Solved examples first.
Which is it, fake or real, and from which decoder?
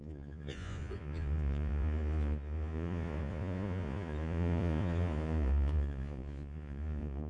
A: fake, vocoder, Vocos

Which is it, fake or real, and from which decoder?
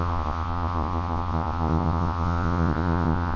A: fake, vocoder, Vocos